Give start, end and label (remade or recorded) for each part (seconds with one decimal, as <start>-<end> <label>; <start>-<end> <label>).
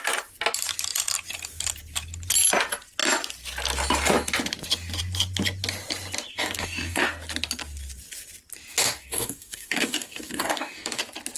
0.0-6.3 recorded; 6.3-7.0 remade; 7.0-8.8 recorded; 8.8-11.0 remade; 11.0-11.4 recorded